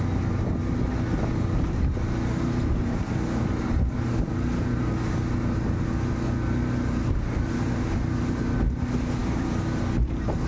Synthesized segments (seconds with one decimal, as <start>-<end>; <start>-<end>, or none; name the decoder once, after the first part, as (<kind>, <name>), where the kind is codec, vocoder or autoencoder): none